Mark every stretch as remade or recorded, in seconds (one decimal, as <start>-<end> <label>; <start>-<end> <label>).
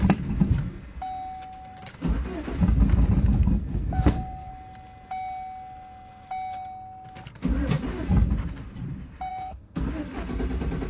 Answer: 0.0-3.4 recorded; 3.4-4.5 remade; 4.5-9.3 recorded; 9.3-9.9 remade; 9.9-10.9 recorded